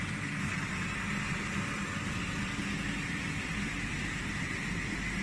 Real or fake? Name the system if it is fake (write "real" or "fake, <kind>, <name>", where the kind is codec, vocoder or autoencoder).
real